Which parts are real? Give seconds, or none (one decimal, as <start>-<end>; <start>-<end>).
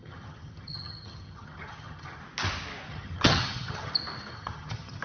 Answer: 2.2-2.9; 3.9-4.3